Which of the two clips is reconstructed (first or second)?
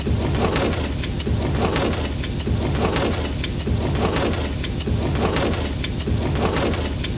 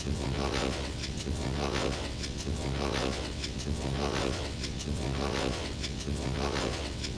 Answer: second